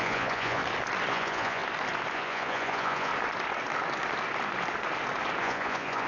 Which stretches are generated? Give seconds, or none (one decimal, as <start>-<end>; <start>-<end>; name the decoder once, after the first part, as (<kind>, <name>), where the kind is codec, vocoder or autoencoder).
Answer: 0.0-0.6 (vocoder, Vocos); 1.1-1.6; 2.1-3.1; 5.4-6.1